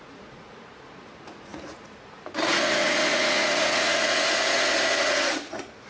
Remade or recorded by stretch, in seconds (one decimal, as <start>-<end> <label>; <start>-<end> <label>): 0.0-5.9 remade